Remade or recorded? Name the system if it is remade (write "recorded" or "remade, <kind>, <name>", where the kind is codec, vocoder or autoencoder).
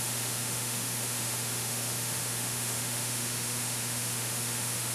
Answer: remade, autoencoder, DAC-VAE